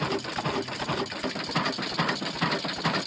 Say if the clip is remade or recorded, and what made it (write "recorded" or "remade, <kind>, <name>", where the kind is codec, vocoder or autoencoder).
recorded